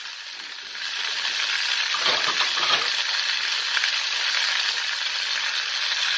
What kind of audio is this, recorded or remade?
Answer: recorded